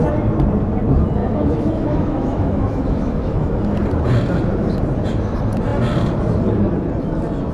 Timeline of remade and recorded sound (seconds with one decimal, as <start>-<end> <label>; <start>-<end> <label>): 0.0-1.2 recorded; 1.2-3.6 remade; 3.6-7.5 recorded